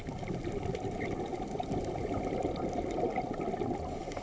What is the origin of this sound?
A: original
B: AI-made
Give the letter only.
A